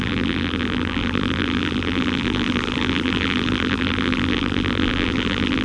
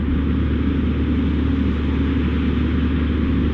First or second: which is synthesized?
first